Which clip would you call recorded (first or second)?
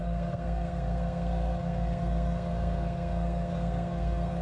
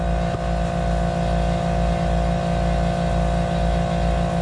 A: second